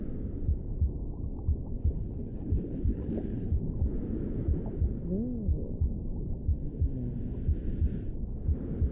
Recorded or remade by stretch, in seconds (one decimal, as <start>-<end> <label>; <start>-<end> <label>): 0.0-1.8 recorded; 1.8-3.6 remade; 3.6-8.9 recorded